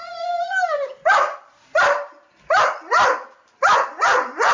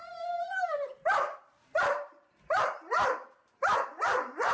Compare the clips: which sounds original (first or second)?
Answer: first